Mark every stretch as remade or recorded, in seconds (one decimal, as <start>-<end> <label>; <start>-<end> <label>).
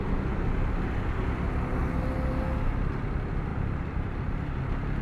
0.0-3.5 recorded; 3.5-4.6 remade; 4.6-5.0 recorded